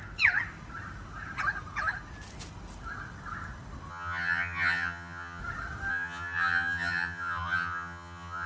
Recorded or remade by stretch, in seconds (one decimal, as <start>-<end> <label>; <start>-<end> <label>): 0.0-3.9 recorded; 3.9-5.4 remade; 5.4-5.9 recorded; 5.9-8.5 remade